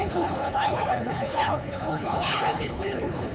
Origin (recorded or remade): remade